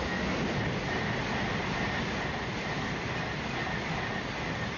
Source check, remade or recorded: recorded